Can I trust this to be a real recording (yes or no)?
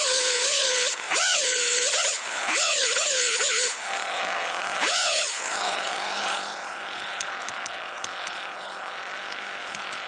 no